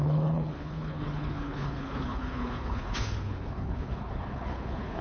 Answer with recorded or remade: remade